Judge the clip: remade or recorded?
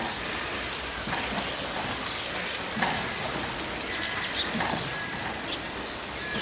recorded